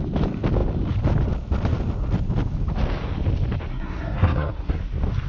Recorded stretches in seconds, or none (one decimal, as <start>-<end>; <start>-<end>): 0.0-3.7; 4.8-5.3